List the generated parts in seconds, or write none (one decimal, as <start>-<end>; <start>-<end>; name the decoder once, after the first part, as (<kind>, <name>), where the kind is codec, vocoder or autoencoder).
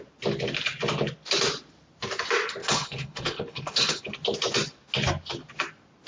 2.6-4.0 (codec, HILCodec)